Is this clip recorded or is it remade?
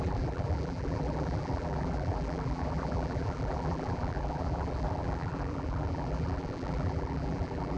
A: remade